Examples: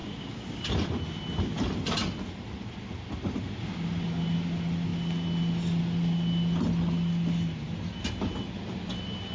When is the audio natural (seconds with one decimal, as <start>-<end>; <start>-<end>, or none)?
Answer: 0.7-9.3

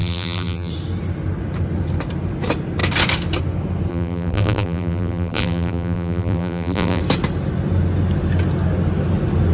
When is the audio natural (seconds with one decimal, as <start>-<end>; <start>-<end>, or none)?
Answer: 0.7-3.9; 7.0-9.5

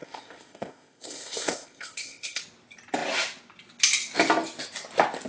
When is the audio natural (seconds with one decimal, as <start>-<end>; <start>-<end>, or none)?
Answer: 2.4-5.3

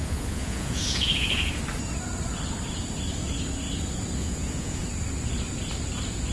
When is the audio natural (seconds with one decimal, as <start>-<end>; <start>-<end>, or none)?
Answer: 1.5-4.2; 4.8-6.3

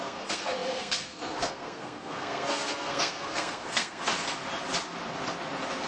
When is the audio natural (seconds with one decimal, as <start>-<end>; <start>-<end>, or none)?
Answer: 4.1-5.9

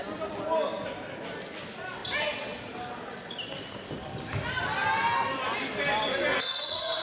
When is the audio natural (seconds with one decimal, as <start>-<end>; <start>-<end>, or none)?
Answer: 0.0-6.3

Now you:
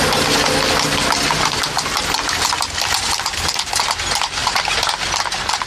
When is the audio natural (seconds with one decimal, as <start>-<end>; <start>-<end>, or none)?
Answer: 0.0-5.7

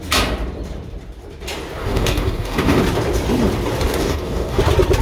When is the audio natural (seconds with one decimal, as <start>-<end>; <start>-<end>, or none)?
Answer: 0.0-1.8; 2.8-4.0; 4.6-5.0